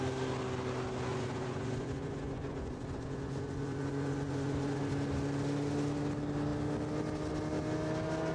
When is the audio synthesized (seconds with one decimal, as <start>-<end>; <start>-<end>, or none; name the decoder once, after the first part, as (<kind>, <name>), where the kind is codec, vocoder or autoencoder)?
1.1-4.8 (vocoder, Vocos)